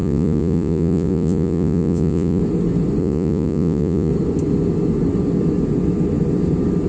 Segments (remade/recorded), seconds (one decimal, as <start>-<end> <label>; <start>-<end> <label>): 0.0-2.4 remade; 2.4-3.0 recorded; 3.0-4.1 remade; 4.1-6.9 recorded